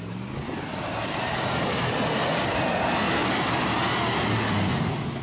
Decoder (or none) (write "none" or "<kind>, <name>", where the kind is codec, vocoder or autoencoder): none